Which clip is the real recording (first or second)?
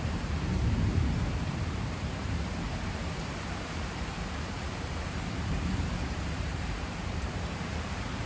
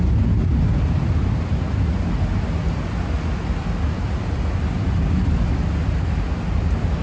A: second